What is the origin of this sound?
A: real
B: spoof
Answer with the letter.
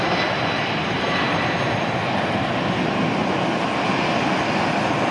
A